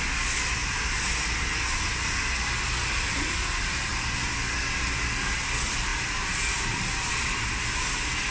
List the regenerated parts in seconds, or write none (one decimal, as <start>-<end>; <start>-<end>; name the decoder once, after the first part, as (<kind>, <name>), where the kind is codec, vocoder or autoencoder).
0.6-1.4 (vocoder, BigVGAN v2); 3.9-5.4; 5.9-7.1